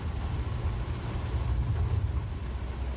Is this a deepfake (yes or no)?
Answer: no